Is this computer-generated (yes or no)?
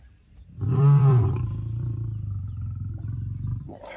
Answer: yes